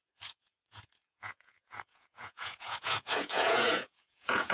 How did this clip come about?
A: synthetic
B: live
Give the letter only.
A